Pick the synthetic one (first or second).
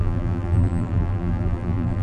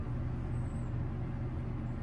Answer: first